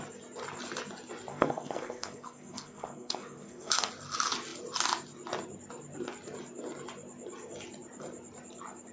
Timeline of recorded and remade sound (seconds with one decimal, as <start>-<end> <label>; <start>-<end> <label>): 0.0-1.3 recorded; 1.3-3.9 remade; 3.9-8.9 recorded